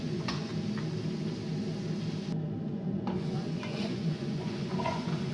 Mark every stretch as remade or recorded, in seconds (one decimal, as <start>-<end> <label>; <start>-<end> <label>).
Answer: 0.0-0.5 remade; 0.5-2.7 recorded; 2.7-5.3 remade